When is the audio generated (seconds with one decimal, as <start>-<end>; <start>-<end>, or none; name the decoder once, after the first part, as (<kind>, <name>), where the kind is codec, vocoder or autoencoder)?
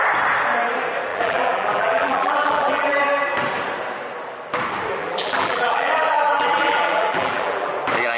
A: 1.1-3.0 (vocoder, BigVGAN v2); 5.0-7.7